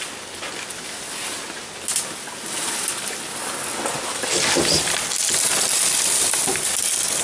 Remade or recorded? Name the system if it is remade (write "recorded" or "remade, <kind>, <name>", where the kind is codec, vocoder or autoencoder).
recorded